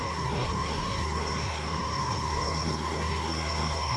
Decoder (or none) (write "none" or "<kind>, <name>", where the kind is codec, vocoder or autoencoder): codec, SNAC